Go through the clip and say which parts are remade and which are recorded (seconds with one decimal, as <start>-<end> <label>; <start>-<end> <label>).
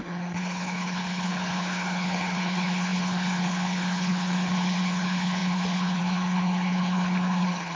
0.0-7.8 remade